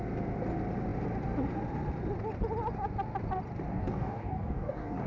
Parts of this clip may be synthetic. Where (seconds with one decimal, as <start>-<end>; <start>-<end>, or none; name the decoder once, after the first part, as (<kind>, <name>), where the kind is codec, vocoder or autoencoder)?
3.7-5.1 (codec, DAC)